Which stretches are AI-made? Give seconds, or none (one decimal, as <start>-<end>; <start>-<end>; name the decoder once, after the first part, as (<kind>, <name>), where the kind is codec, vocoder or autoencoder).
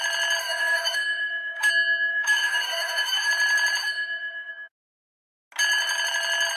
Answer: 0.4-1.7 (autoencoder, DAC-VAE); 2.1-3.3; 3.8-4.5